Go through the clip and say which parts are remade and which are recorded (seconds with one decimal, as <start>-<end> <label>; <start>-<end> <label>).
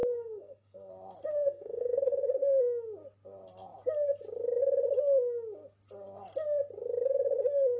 0.0-0.9 remade; 0.9-1.3 recorded; 1.3-2.2 remade; 2.2-7.8 recorded